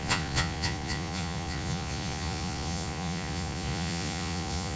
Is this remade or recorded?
remade